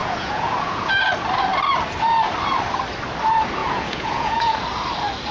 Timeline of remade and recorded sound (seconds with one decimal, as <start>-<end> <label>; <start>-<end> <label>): 0.0-1.0 remade; 1.0-3.6 recorded; 3.6-4.6 remade; 4.6-5.3 recorded